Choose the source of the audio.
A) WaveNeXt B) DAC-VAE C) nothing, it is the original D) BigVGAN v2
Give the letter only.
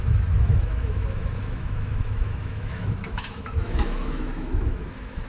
B